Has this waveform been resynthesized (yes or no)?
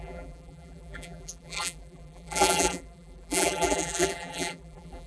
yes